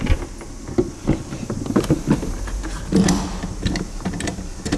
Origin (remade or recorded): recorded